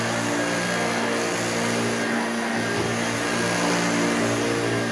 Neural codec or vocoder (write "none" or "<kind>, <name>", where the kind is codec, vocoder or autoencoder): none